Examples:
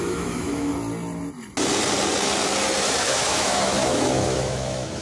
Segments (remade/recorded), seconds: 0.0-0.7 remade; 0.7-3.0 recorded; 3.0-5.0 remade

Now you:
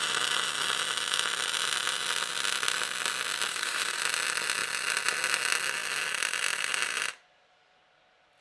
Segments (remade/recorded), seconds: 0.0-3.5 recorded; 3.5-4.0 remade; 4.0-8.4 recorded

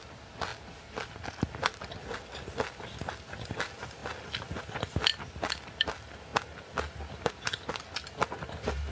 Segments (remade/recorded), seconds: 0.0-8.9 recorded